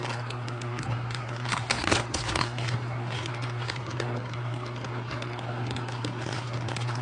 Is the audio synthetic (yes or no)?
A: yes